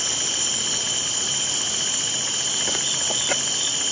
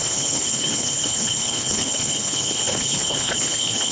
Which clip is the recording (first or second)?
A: first